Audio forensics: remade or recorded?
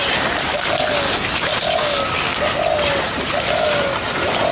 recorded